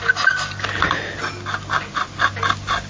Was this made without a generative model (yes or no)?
yes